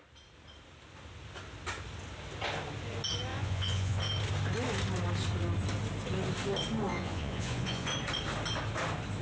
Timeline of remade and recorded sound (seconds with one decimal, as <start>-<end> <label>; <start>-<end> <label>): 0.0-3.3 recorded; 3.3-4.0 remade; 4.0-6.9 recorded; 6.9-7.9 remade; 7.9-9.2 recorded